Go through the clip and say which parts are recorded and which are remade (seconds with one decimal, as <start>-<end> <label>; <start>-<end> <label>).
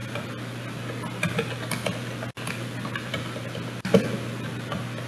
0.0-5.1 recorded